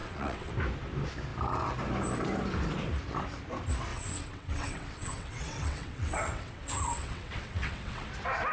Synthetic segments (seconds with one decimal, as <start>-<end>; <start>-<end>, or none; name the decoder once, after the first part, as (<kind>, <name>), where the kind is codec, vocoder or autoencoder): 0.0-0.5 (vocoder, WaveNeXt); 3.9-8.1